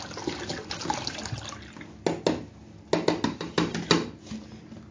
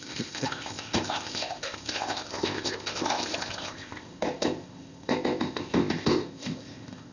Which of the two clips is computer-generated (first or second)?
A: second